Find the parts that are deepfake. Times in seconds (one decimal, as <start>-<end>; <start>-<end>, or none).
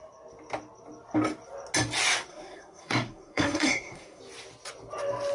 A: 2.3-4.2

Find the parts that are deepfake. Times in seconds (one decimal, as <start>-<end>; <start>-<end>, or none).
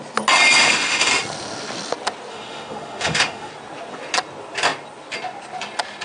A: 0.6-1.1; 2.3-3.5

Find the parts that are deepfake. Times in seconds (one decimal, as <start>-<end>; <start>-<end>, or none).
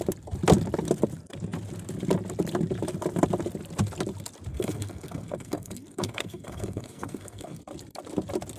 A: 4.5-7.6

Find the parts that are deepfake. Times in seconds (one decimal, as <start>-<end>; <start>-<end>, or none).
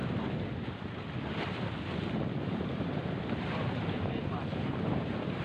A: 2.4-5.4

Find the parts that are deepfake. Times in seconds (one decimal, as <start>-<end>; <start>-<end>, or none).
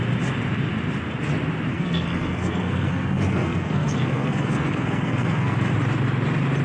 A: 1.7-5.7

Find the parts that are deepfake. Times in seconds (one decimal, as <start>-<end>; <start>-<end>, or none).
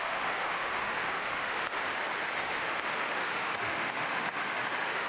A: 0.0-1.8; 2.4-5.1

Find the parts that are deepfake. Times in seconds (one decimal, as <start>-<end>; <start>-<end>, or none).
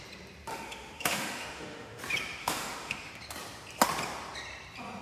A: 0.5-2.0; 2.4-3.1